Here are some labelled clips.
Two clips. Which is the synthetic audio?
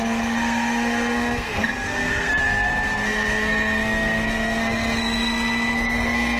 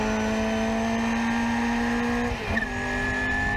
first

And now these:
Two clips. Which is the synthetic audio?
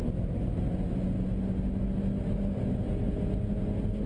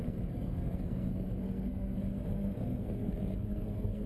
second